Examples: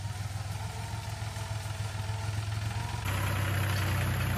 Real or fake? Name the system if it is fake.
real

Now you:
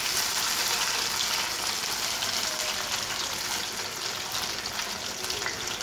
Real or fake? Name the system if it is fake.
real